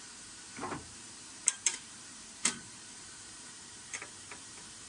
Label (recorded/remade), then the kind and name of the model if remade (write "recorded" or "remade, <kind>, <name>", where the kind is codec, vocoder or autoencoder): remade, vocoder, BigVGAN v2